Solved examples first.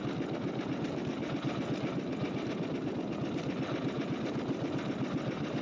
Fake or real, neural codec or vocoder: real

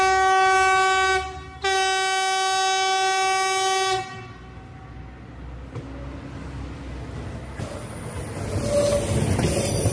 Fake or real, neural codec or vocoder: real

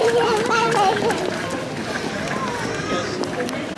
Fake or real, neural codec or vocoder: real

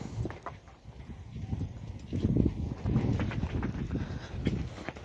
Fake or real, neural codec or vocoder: real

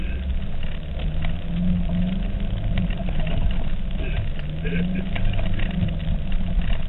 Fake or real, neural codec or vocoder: real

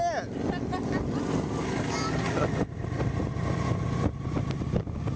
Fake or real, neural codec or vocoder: real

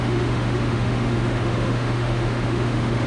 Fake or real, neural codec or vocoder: fake, autoencoder, DAC-VAE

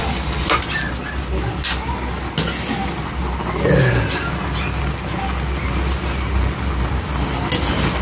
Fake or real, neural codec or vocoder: real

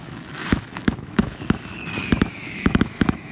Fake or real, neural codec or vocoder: fake, autoencoder, DAC-VAE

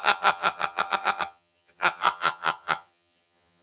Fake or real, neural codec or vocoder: fake, vocoder, HiFi-GAN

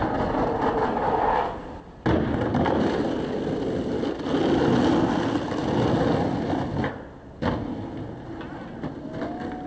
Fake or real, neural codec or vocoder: real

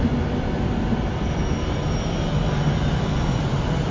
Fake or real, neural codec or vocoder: real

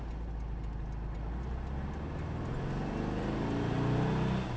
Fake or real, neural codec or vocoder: real